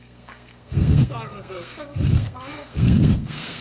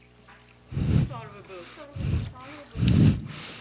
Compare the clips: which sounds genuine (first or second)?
second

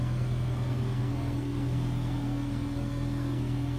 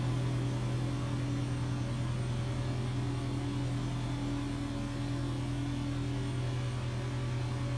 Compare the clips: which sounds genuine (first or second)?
second